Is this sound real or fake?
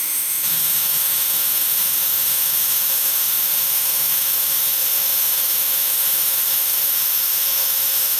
fake